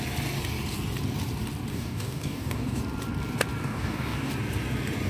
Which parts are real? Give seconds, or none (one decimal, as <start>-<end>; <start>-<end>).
0.0-1.7; 2.8-3.6; 4.3-5.1